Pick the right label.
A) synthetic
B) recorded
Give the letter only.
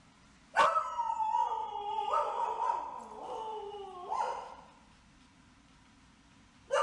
B